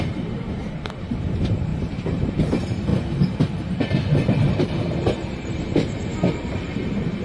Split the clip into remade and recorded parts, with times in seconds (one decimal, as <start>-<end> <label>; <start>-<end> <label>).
0.0-2.9 remade; 2.9-4.6 recorded; 4.6-7.2 remade